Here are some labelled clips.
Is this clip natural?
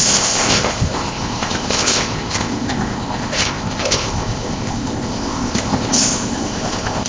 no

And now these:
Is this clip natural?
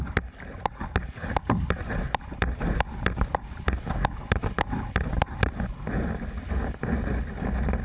yes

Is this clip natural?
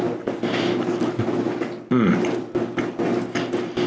yes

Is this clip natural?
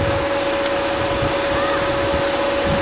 yes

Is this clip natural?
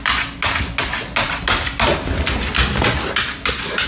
yes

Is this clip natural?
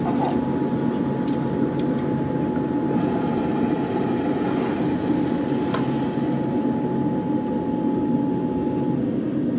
yes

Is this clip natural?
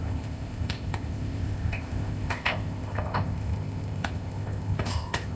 no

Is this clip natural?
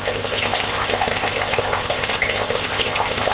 no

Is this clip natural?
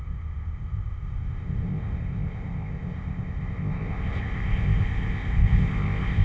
no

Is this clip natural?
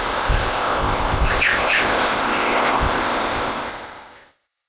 no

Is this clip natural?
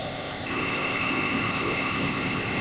no